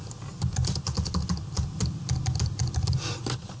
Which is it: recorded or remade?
recorded